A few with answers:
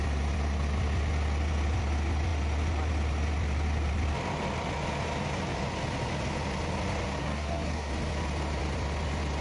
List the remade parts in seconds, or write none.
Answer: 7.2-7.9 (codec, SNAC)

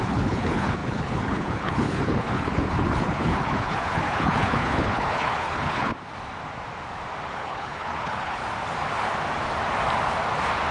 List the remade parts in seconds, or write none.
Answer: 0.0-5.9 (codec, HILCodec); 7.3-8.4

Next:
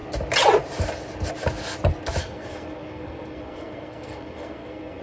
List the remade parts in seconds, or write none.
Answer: 2.2-5.0 (codec, SNAC)

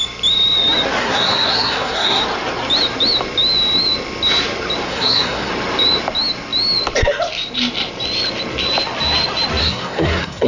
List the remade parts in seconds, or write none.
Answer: 1.0-2.2 (codec, SNAC); 4.9-5.5; 9.6-10.5

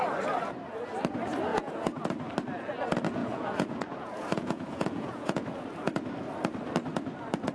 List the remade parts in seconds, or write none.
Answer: 1.5-2.1 (vocoder, Vocos); 3.2-5.5